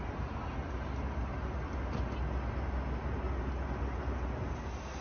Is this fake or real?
real